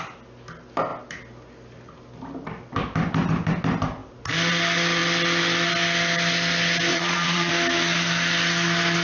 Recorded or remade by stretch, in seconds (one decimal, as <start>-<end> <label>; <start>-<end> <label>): 0.0-6.9 recorded; 6.9-7.5 remade; 7.5-9.0 recorded